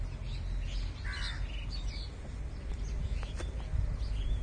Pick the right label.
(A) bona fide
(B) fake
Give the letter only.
A